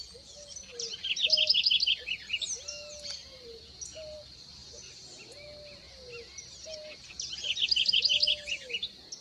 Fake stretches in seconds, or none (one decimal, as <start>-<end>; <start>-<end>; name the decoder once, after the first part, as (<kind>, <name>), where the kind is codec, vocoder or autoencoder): none